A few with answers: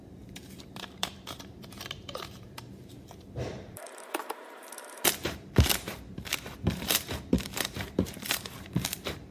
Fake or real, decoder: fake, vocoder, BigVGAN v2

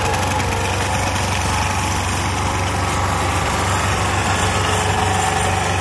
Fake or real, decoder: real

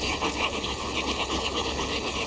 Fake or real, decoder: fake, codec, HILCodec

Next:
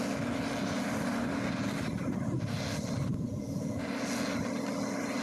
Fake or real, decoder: real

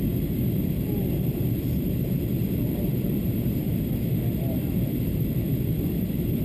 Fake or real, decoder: fake, vocoder, BigVGAN v2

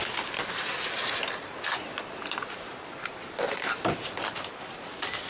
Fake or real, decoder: real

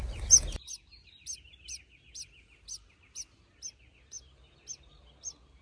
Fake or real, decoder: real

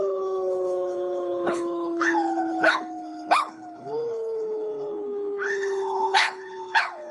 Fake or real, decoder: fake, codec, HILCodec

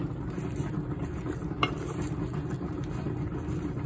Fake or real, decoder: real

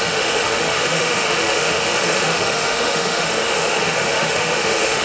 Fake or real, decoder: fake, autoencoder, DAC-VAE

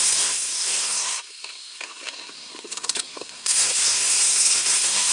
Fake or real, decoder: fake, codec, SNAC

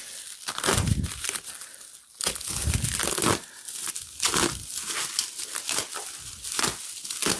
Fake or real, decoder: real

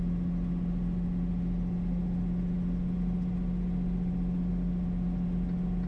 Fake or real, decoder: real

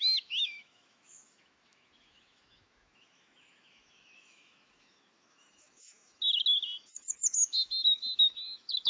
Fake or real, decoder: fake, autoencoder, DAC-VAE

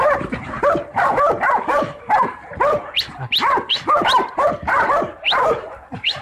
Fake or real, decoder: fake, vocoder, BigVGAN v2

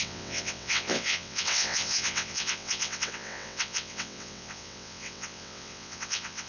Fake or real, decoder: fake, vocoder, WaveNeXt